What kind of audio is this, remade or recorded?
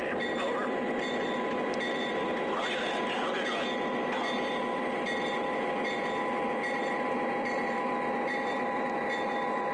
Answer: remade